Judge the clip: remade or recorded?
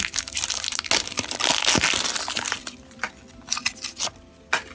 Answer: recorded